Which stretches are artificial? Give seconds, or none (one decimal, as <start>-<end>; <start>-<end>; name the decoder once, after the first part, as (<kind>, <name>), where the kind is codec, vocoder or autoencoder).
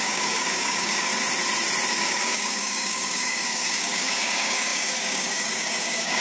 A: 0.0-1.1 (codec, DAC); 1.9-6.2